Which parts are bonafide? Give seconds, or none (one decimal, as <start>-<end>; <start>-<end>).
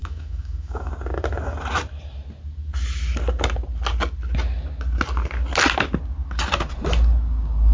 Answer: 0.9-7.7